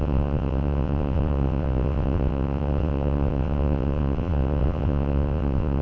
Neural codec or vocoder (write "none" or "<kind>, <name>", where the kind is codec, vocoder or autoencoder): vocoder, WaveNeXt